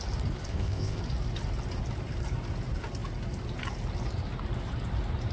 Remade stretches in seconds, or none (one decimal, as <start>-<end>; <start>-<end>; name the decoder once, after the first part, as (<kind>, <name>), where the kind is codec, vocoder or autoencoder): 0.5-1.0 (codec, ZipCodec)